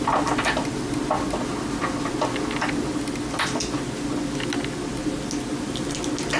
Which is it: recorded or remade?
recorded